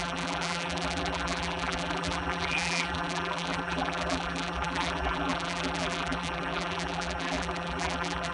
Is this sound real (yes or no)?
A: no